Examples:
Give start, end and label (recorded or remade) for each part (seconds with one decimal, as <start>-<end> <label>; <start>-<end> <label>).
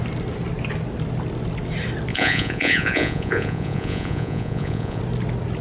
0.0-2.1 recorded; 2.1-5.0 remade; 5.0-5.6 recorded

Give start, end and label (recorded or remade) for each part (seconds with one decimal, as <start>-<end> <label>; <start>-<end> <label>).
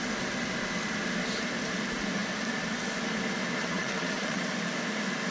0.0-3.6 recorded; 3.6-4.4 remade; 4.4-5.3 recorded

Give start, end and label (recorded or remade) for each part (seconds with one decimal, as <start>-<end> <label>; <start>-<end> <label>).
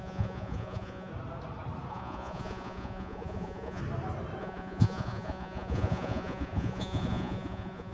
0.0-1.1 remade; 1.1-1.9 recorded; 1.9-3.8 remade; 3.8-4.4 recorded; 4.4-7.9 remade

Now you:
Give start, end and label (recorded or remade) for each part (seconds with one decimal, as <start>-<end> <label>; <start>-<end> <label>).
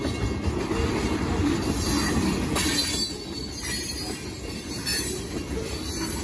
0.0-6.2 recorded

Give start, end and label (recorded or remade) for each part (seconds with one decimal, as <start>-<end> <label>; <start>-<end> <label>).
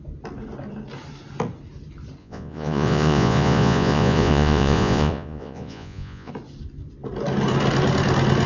0.0-2.2 recorded; 2.2-6.3 remade; 6.3-8.5 recorded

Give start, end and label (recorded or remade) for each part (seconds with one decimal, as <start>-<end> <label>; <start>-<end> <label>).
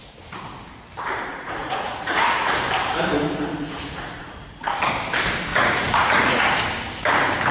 0.0-1.3 recorded; 1.3-2.5 remade; 2.5-3.5 recorded; 3.5-4.8 remade; 4.8-5.5 recorded; 5.5-6.4 remade; 6.4-7.5 recorded